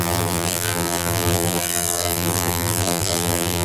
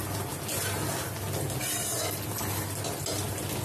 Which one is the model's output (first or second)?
first